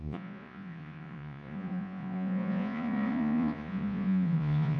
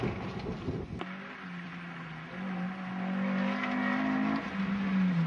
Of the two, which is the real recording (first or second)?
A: second